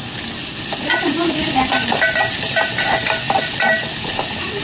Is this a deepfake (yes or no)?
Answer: no